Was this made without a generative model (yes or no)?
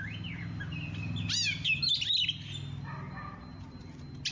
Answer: yes